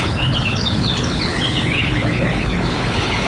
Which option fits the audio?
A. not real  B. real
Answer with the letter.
A